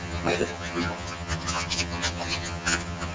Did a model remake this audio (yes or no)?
yes